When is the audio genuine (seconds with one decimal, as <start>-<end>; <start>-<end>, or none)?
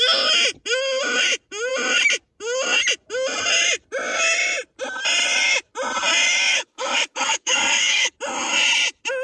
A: 0.0-6.5; 8.1-9.2